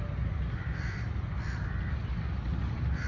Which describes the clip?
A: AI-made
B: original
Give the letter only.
B